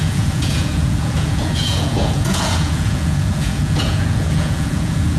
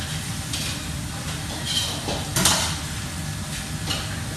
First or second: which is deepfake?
first